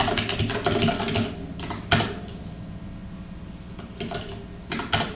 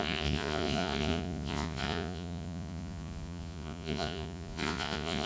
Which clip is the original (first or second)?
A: first